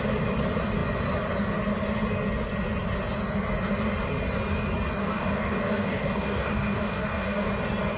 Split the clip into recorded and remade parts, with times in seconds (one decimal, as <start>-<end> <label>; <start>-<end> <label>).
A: 0.0-5.0 recorded; 5.0-7.5 remade; 7.5-8.0 recorded